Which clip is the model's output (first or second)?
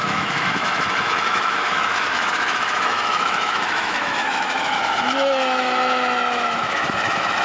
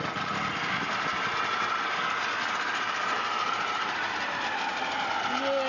first